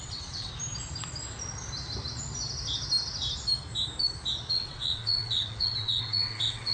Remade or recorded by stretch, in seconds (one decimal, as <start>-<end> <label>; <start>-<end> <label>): 0.0-0.5 remade; 0.5-4.5 recorded; 4.5-6.7 remade